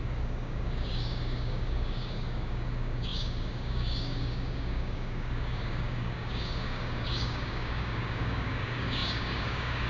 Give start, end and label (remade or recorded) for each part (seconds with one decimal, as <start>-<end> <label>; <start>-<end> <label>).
0.0-9.9 remade